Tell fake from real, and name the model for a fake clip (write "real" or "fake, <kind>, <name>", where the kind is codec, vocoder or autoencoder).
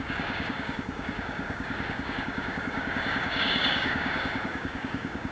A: fake, codec, DAC